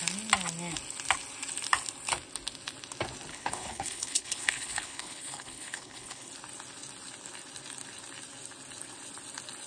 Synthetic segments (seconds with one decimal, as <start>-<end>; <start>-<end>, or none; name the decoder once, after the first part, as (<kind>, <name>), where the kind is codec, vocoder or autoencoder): 3.3-6.3 (codec, HILCodec)